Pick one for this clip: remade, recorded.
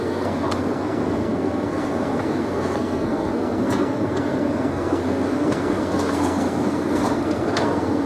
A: remade